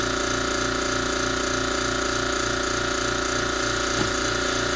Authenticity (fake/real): real